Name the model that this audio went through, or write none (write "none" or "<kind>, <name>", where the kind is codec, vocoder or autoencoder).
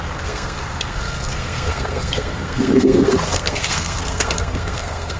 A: codec, SNAC